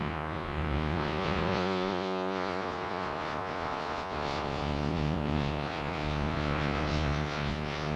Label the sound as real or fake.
fake